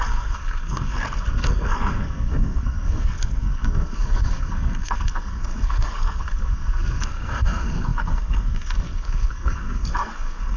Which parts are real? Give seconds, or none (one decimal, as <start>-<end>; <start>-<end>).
none